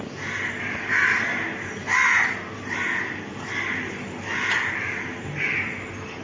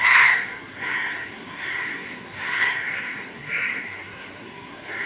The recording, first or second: first